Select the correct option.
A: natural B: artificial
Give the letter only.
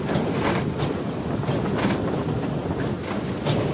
A